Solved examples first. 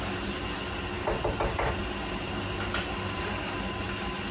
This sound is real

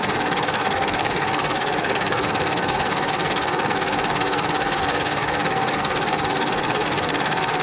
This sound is fake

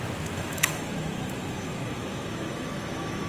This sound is fake